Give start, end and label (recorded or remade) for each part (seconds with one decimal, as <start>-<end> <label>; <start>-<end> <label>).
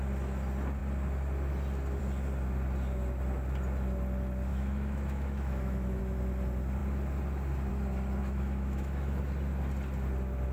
0.0-4.5 recorded; 4.5-6.0 remade; 6.0-8.2 recorded; 8.2-9.2 remade; 9.2-10.5 recorded